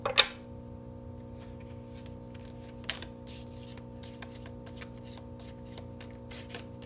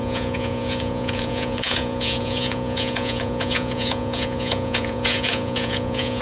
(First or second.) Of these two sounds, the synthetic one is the second